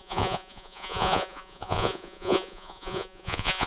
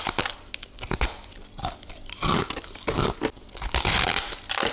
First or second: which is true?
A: second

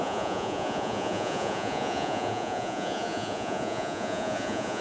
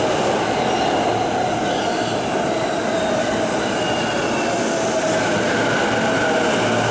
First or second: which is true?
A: second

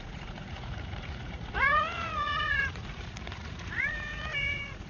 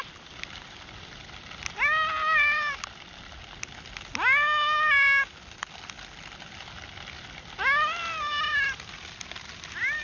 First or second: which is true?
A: second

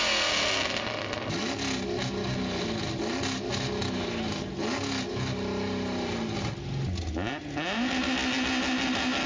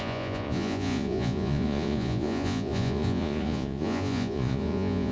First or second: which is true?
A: first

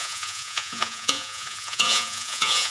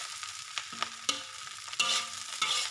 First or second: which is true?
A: second